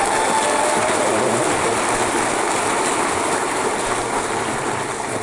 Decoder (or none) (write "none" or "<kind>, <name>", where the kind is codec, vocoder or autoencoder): none